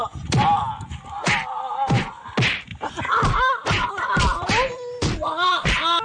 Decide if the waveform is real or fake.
real